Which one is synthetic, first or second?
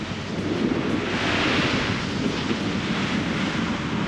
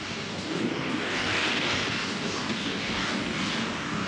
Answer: second